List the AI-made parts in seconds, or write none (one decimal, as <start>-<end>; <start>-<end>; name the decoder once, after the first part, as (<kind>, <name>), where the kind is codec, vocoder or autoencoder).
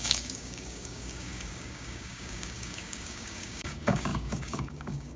0.0-5.2 (codec, DAC)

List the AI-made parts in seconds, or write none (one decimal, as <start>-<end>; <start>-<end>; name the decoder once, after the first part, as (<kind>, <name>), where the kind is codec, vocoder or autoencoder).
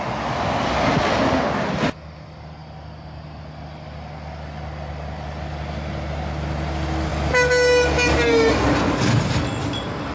none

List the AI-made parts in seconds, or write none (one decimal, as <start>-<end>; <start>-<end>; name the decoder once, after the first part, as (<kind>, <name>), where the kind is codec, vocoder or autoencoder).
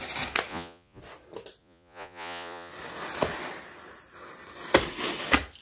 0.5-1.0 (vocoder, Vocos); 1.6-2.7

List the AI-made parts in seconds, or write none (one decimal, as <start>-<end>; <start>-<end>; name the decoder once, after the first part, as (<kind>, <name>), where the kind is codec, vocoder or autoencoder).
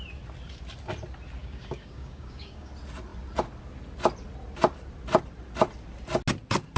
1.4-2.7 (codec, DAC)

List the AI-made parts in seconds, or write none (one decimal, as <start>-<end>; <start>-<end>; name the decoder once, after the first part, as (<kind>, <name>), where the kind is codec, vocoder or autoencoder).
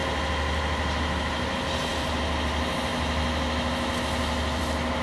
none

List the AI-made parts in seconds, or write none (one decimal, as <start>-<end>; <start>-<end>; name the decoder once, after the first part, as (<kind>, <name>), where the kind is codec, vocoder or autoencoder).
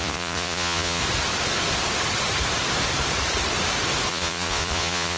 0.0-1.0 (vocoder, Vocos); 4.1-5.2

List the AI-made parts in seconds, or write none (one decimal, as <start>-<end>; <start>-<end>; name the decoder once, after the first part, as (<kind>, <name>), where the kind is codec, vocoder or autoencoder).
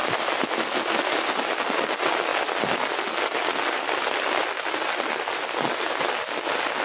none